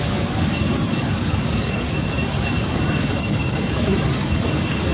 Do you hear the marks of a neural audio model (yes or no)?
yes